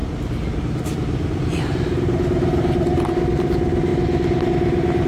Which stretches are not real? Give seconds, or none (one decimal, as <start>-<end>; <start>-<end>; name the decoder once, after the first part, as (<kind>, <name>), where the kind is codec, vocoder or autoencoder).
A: 0.0-3.1 (vocoder, BigVGAN v2)